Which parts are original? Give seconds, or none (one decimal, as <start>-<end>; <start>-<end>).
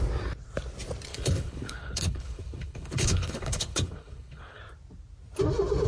0.0-1.1; 4.6-5.9